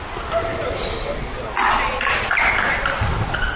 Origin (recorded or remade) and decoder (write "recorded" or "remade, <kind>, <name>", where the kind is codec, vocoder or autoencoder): recorded